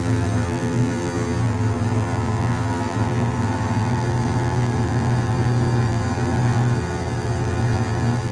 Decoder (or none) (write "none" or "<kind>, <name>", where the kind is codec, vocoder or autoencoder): vocoder, BigVGAN v2